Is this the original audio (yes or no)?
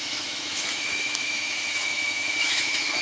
no